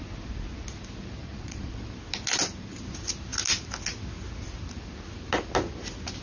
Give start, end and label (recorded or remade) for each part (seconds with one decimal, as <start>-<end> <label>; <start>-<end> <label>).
0.0-1.2 recorded; 1.2-1.7 remade; 1.7-6.2 recorded